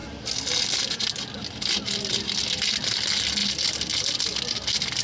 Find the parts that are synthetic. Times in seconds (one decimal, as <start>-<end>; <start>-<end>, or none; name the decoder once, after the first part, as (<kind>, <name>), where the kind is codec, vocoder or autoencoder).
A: none